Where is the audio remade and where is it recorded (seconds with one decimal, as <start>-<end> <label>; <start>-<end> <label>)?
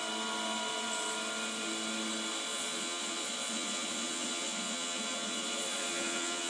0.0-2.5 recorded; 2.5-6.5 remade